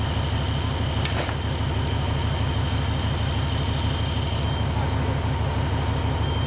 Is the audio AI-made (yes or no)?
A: no